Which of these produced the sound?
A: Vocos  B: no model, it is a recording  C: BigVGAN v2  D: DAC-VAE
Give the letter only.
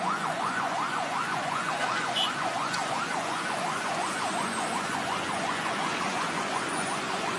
A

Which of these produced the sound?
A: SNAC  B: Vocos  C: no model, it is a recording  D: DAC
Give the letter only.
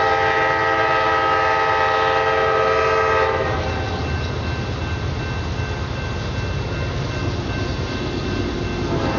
C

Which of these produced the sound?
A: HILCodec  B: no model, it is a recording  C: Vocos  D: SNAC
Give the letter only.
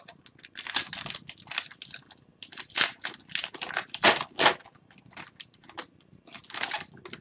B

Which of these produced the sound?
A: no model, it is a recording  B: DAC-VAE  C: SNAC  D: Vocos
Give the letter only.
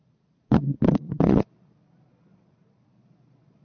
D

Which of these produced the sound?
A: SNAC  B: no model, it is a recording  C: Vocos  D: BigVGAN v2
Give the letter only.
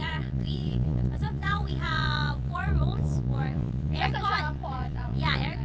C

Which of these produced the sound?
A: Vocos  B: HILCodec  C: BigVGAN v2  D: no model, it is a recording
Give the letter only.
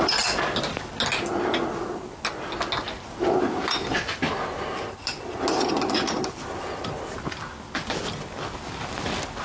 D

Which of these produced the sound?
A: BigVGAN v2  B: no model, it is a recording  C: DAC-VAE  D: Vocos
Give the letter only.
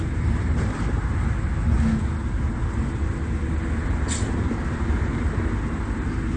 B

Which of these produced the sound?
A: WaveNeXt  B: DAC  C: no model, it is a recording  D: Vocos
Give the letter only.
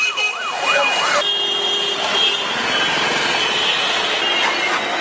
C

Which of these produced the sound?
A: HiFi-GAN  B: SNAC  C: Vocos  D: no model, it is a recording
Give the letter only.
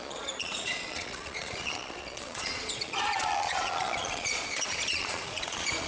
C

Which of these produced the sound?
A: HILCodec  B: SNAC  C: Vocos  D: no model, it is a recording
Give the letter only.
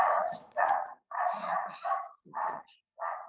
C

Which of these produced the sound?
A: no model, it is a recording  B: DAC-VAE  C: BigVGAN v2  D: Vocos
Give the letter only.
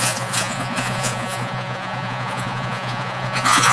D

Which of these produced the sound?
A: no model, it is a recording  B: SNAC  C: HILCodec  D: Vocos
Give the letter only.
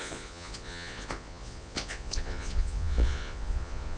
D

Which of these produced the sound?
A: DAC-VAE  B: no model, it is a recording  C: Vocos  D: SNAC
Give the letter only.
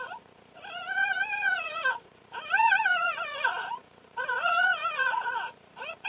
C